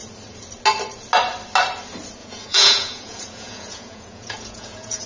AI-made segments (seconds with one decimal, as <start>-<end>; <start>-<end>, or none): 2.2-5.1